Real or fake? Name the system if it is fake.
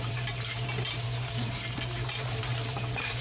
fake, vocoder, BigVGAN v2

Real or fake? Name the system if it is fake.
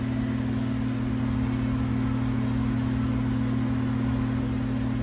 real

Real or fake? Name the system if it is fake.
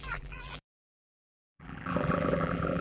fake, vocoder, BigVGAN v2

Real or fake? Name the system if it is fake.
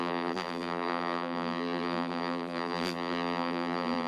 fake, vocoder, BigVGAN v2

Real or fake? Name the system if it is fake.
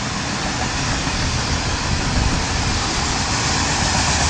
real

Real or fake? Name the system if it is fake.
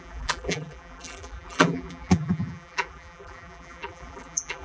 fake, vocoder, BigVGAN v2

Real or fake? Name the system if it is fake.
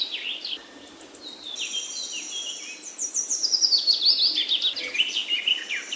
real